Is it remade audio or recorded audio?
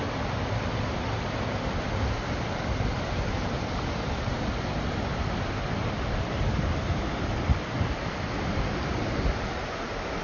recorded